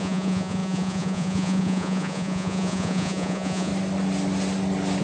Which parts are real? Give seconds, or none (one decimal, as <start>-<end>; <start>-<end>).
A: 3.7-5.0